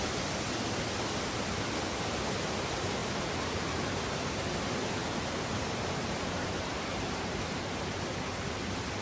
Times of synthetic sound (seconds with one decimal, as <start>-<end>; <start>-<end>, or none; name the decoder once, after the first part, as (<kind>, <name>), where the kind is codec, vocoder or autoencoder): 3.0-3.8 (vocoder, BigVGAN v2); 5.0-8.6